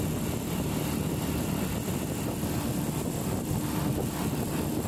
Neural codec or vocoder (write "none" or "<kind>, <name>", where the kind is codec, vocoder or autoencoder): none